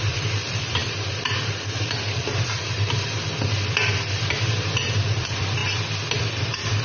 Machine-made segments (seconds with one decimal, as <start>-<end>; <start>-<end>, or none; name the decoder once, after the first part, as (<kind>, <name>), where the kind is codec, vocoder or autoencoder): 0.0-5.6 (vocoder, BigVGAN v2); 6.2-6.8